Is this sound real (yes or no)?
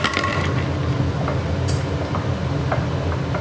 yes